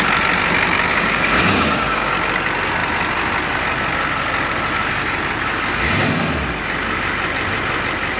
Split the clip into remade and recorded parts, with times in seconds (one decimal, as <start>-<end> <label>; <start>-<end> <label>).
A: 0.0-0.9 recorded; 0.9-2.1 remade; 2.1-8.2 recorded